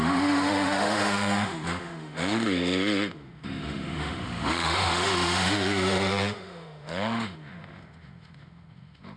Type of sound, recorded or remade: remade